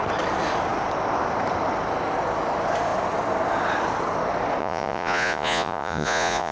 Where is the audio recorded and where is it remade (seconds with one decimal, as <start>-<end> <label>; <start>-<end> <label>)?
0.0-4.6 recorded; 4.6-6.5 remade